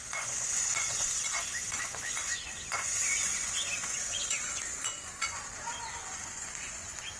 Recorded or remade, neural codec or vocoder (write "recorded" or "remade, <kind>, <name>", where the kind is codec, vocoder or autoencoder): remade, vocoder, Vocos